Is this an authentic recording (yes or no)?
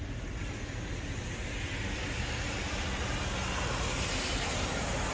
yes